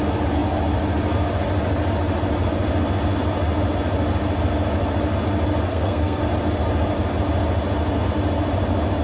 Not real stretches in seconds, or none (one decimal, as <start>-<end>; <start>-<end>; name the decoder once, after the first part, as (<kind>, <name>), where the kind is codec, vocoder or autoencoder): 5.7-6.2 (codec, SNAC)